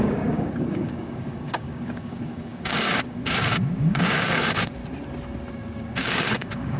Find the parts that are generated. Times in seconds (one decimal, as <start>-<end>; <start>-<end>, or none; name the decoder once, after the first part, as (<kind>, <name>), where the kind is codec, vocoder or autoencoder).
0.0-4.8 (codec, DAC); 5.5-6.8